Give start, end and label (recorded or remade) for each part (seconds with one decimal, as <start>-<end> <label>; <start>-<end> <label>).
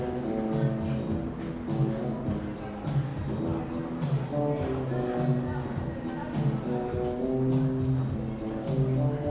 0.0-9.3 recorded